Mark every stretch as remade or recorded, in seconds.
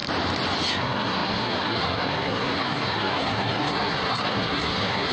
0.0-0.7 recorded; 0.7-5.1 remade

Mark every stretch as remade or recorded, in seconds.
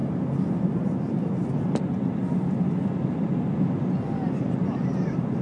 0.0-5.4 recorded